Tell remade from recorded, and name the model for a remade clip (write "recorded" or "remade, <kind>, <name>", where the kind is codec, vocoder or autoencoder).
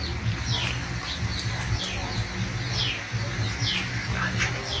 recorded